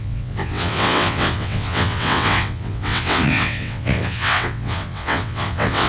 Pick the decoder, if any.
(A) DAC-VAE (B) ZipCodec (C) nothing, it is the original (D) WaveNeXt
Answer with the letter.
D